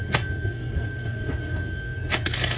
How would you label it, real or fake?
fake